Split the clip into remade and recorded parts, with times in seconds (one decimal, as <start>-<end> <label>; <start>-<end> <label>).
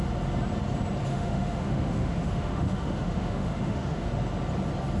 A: 0.0-1.1 recorded; 1.1-4.1 remade; 4.1-5.0 recorded